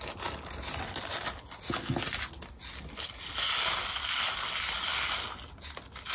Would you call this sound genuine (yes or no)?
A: yes